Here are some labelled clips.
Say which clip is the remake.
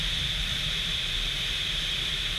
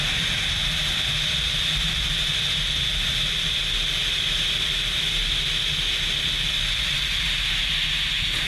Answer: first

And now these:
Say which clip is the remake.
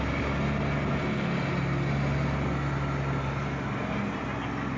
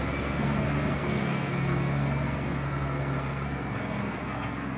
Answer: second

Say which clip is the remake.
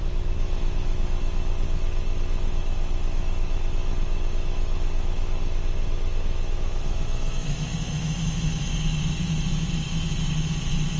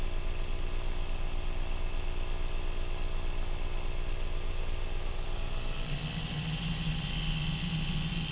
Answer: first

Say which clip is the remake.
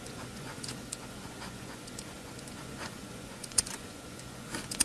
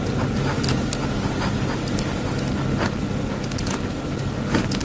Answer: first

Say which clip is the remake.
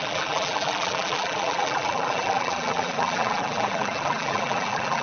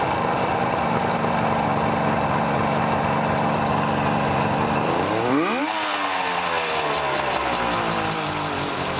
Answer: first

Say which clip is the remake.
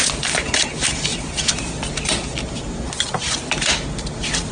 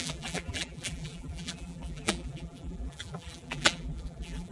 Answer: second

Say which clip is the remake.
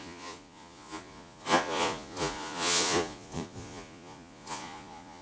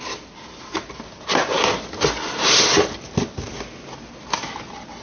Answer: first